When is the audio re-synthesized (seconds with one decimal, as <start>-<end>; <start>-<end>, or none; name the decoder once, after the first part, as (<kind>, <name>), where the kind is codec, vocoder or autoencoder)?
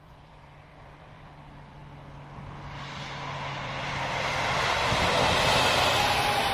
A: 0.0-1.8 (vocoder, BigVGAN v2); 3.6-6.5